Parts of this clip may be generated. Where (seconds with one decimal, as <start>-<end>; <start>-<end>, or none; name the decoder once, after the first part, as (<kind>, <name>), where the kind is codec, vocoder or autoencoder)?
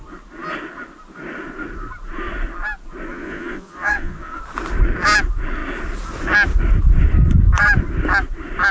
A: 3.1-4.4 (vocoder, Vocos)